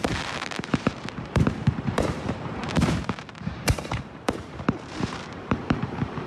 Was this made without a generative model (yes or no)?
no